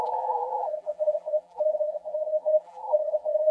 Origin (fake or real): fake